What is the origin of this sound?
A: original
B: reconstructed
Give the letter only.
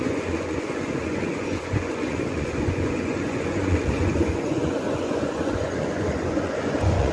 B